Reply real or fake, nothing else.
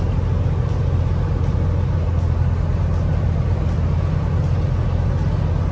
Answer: real